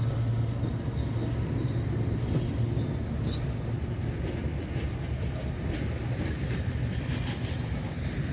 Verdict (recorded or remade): recorded